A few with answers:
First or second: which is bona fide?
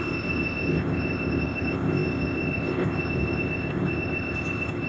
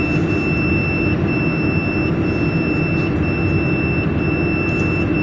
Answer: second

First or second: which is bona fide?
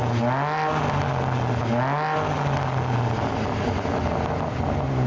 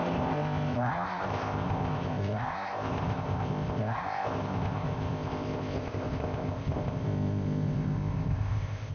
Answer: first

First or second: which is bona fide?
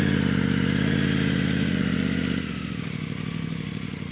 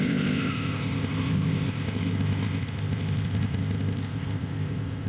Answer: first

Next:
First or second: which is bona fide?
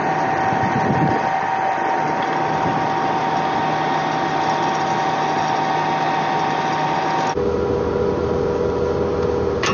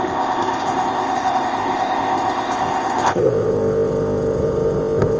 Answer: first